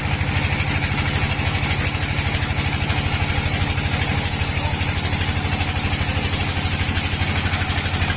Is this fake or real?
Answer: real